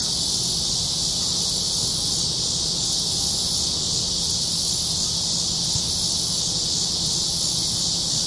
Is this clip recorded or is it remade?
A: recorded